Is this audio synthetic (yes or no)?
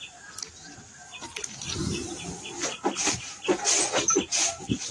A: no